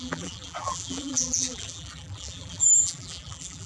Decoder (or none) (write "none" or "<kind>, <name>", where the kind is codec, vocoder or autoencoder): vocoder, BigVGAN v2